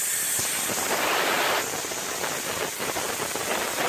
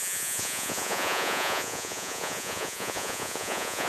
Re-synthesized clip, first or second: second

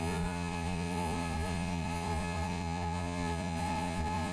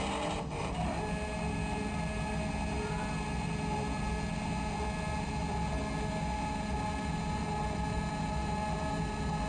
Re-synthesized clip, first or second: first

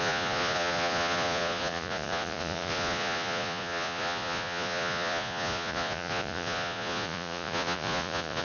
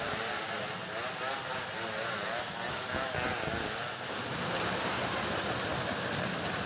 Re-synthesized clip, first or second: first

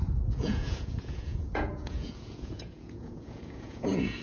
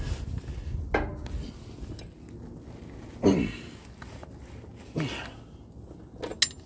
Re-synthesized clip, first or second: first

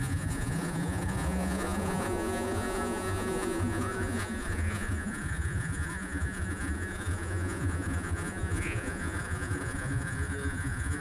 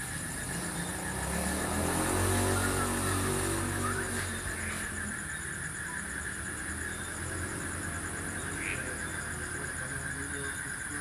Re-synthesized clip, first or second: first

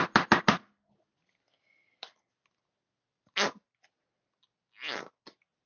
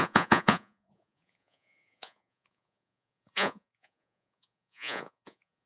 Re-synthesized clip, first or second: second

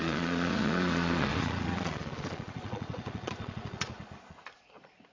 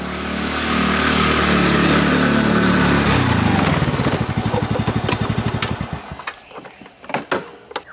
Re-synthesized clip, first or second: first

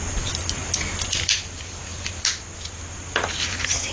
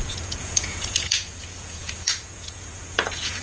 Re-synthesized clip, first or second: second